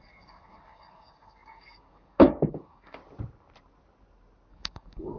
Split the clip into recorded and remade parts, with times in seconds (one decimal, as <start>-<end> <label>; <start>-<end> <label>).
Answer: 0.0-3.0 remade; 3.0-4.5 recorded; 4.5-5.2 remade